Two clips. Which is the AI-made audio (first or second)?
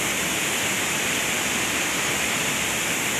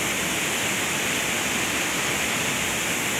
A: first